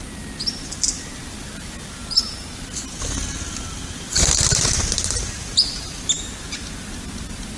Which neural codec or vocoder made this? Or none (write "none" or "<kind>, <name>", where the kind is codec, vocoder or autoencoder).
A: none